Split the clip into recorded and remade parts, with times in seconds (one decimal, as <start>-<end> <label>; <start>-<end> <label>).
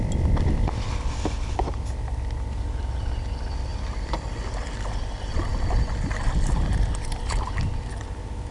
0.0-8.5 recorded